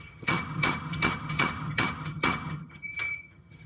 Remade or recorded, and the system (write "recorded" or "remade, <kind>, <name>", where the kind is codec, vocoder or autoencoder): remade, vocoder, HiFi-GAN